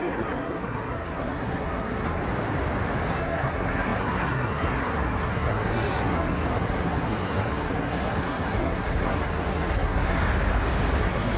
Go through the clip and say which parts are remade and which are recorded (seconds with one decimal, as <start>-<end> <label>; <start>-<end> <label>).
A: 0.0-2.2 remade; 2.2-3.1 recorded; 3.1-10.2 remade; 10.2-11.0 recorded; 11.0-11.4 remade